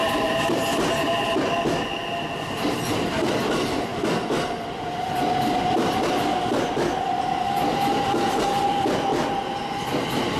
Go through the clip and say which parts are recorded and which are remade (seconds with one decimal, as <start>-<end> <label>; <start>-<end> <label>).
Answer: 0.0-0.6 remade; 0.6-10.4 recorded